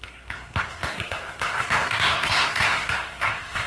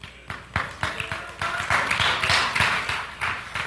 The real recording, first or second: second